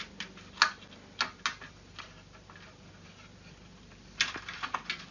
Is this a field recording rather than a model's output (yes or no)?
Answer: yes